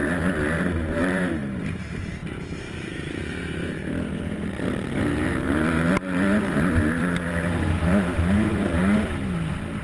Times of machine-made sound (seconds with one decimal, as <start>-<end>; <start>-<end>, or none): 0.6-8.8